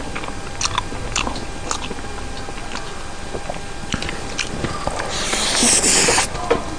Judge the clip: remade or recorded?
recorded